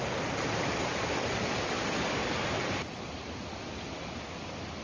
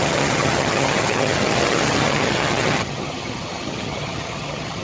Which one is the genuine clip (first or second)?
first